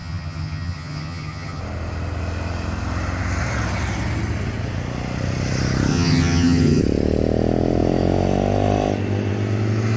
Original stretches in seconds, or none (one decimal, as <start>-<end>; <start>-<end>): 1.6-5.9; 6.8-10.0